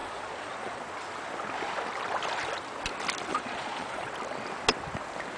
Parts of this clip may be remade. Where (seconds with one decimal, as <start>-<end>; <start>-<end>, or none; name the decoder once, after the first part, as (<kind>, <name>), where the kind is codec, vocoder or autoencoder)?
0.0-0.8 (vocoder, Vocos); 3.3-4.1